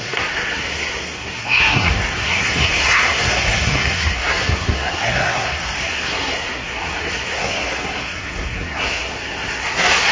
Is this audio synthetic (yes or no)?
yes